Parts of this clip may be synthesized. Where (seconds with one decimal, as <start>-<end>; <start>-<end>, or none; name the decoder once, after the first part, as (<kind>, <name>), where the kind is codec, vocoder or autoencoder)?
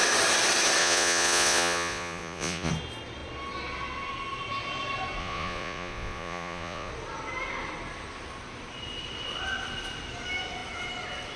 0.8-2.7 (vocoder, Vocos); 5.2-6.9